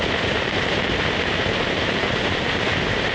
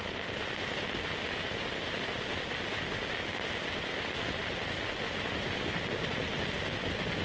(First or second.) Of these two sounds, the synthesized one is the first